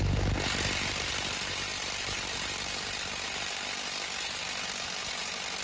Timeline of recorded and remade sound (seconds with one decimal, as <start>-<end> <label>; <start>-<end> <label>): 0.0-5.6 recorded